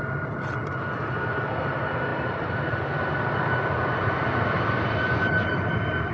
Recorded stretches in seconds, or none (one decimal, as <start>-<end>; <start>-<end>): 0.0-2.1